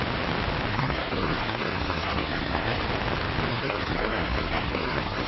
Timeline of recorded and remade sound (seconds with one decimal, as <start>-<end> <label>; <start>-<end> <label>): 0.0-0.7 recorded; 0.7-2.8 remade; 2.8-3.5 recorded; 3.5-5.3 remade